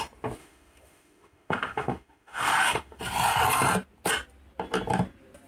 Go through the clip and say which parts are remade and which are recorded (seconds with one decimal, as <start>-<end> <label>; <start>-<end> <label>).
0.0-0.4 recorded; 0.4-3.0 remade; 3.0-5.5 recorded

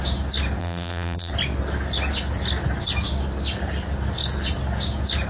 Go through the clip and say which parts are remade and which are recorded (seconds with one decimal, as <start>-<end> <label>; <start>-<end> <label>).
0.0-0.6 recorded; 0.6-1.3 remade; 1.3-5.3 recorded